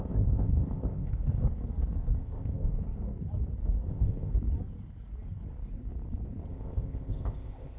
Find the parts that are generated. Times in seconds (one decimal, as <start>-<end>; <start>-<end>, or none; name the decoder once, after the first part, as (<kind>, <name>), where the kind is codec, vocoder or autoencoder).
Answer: 0.0-1.2 (codec, ZipCodec); 2.2-2.7; 3.9-4.3; 6.5-7.8